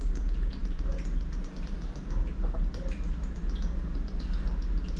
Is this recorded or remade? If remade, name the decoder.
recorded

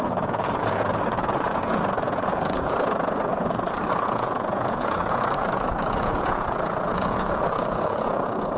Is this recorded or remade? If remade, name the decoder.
remade, vocoder, Vocos